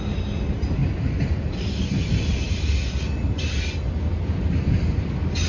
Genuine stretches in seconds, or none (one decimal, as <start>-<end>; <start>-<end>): 0.0-5.5